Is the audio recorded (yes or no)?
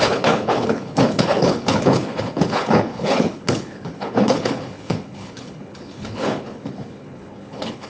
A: no